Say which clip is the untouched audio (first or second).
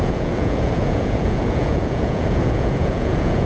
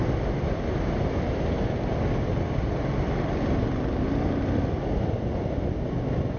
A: second